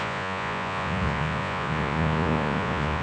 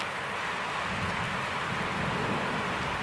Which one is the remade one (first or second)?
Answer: first